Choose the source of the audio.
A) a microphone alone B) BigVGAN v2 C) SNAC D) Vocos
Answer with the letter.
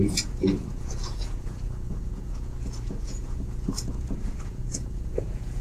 D